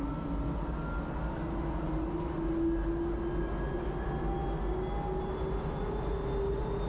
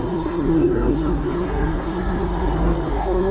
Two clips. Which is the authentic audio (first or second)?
first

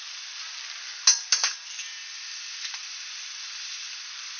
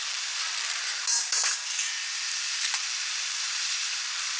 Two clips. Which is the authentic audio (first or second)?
first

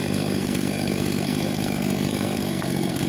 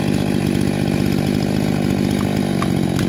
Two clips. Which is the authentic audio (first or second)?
second